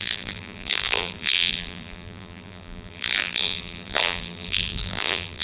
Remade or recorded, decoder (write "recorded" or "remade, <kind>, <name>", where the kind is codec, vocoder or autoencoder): remade, vocoder, BigVGAN v2